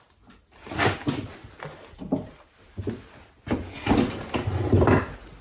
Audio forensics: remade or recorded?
recorded